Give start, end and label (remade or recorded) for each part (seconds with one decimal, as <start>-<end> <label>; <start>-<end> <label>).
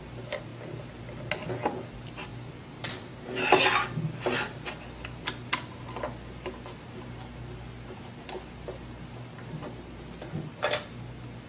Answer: 0.0-11.5 recorded